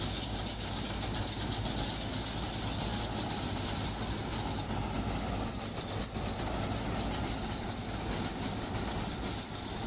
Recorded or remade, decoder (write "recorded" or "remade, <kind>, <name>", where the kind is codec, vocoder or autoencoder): recorded